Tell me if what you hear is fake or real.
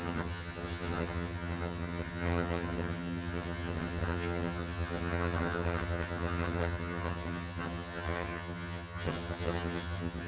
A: fake